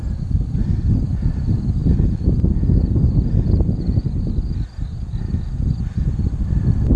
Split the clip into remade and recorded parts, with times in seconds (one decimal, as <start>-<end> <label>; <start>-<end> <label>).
0.0-7.0 recorded